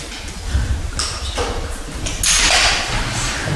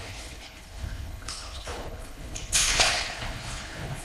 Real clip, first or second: first